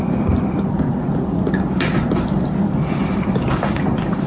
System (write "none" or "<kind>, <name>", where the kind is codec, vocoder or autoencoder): none